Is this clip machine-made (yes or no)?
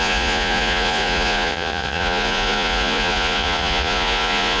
yes